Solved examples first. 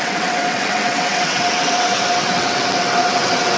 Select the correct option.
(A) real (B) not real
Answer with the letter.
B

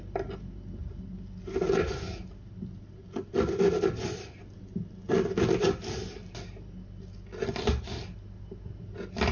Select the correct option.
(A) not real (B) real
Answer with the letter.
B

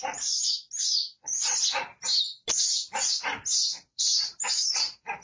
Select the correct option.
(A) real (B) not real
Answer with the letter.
A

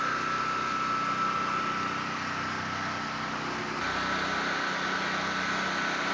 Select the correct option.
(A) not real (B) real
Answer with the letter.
B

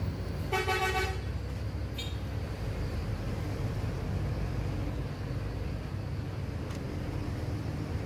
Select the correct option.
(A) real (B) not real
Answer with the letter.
A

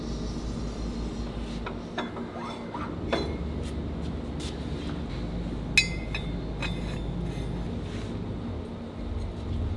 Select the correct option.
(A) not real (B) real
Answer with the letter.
B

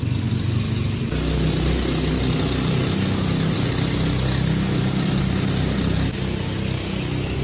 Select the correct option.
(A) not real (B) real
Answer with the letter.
B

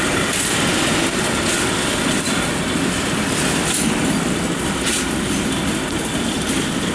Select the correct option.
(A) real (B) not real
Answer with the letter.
A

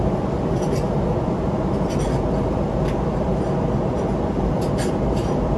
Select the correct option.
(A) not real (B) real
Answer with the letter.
B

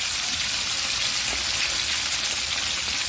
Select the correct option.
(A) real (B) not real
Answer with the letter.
A